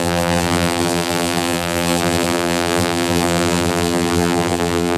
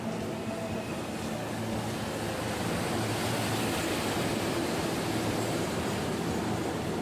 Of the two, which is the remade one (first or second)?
first